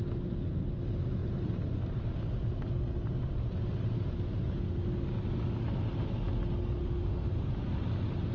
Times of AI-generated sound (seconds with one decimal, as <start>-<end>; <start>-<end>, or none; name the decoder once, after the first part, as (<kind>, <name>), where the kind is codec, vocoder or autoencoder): 6.8-7.5 (autoencoder, DAC-VAE)